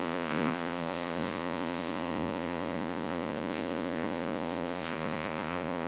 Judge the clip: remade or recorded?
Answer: remade